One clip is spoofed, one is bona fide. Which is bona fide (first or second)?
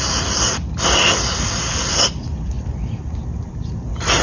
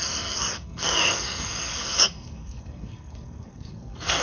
first